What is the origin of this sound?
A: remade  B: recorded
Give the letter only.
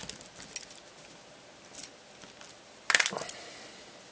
B